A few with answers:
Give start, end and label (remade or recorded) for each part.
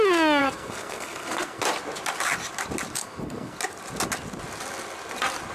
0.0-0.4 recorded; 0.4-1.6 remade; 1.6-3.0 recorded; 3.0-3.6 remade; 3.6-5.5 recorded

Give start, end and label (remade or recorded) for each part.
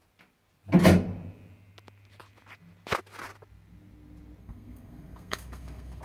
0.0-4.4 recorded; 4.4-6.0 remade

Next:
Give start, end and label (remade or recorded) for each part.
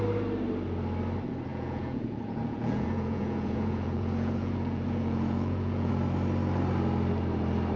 0.0-1.5 recorded; 1.5-5.9 remade; 5.9-7.8 recorded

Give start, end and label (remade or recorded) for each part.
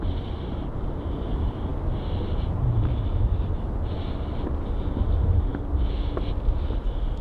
0.0-7.2 recorded